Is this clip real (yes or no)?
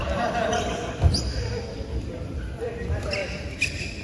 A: no